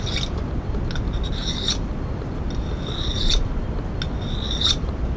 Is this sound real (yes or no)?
yes